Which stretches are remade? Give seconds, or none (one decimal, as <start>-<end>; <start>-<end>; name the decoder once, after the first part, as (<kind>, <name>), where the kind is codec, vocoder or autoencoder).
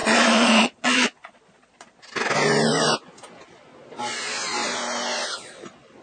0.0-2.0 (vocoder, Vocos)